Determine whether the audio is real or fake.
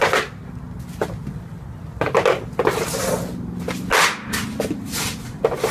real